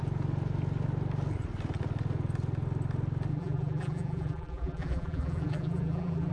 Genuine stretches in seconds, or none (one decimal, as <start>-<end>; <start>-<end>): 0.0-3.3